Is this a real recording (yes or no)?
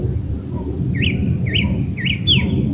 yes